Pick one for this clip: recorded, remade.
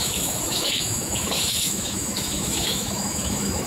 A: remade